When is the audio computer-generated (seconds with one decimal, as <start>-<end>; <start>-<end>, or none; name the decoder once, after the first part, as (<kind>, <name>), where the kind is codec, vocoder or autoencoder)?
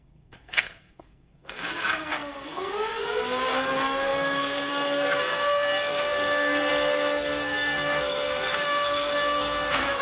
0.0-10.0 (codec, SNAC)